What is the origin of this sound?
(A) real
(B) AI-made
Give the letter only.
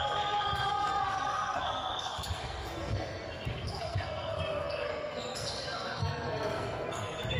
B